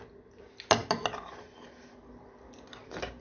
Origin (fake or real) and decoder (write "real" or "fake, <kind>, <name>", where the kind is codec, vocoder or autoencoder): real